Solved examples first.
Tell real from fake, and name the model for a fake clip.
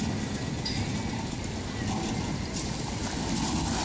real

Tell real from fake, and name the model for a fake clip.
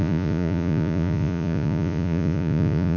fake, vocoder, Vocos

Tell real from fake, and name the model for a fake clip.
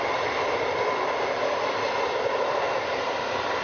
real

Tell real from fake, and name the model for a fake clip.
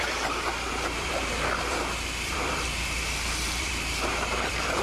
fake, vocoder, BigVGAN v2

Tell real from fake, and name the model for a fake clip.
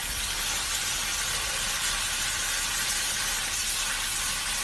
real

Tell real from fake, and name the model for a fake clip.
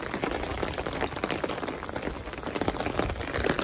real